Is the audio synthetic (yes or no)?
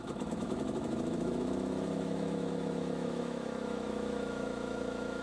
yes